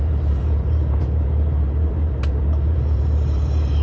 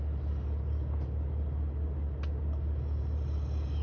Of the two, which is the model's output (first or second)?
first